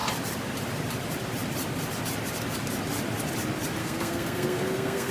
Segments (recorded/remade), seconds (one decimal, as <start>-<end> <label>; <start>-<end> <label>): 0.0-3.8 recorded; 3.8-5.1 remade